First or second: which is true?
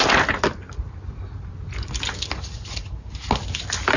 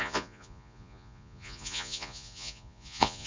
first